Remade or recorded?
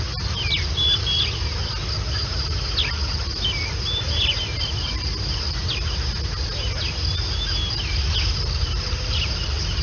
recorded